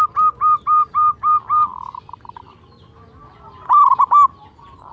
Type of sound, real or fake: real